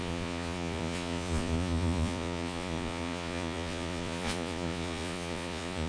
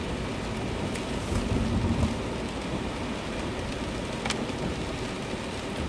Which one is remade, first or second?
first